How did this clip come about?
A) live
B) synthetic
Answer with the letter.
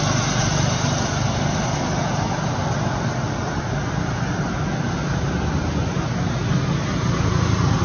A